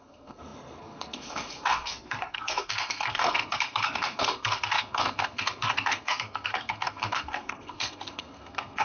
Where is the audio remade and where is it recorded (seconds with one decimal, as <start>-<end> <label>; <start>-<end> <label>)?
0.0-8.8 remade